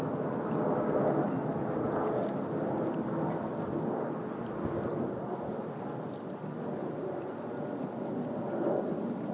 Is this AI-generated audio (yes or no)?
no